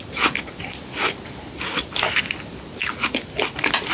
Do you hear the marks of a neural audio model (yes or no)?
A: no